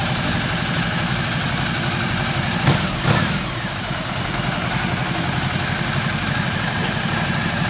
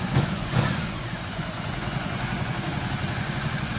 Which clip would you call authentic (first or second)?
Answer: first